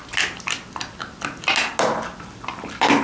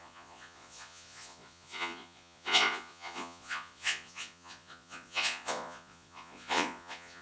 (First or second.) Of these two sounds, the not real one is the second